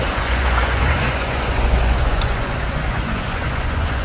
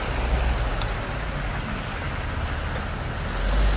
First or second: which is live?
second